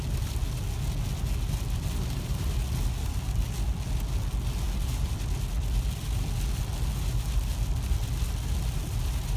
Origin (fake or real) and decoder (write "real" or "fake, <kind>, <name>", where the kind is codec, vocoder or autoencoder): real